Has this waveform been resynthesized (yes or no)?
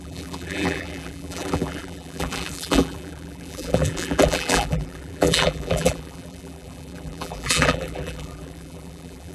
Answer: yes